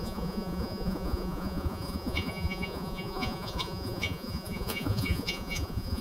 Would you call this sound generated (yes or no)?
yes